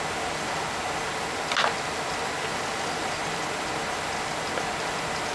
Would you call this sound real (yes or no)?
yes